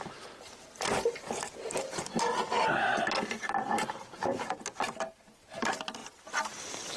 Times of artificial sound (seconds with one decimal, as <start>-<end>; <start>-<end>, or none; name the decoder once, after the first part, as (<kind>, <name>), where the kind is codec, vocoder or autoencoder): none